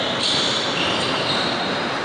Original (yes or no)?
no